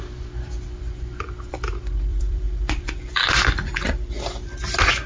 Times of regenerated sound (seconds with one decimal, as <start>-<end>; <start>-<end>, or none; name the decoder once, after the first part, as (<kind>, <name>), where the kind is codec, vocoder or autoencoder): 2.1-4.6 (vocoder, BigVGAN v2)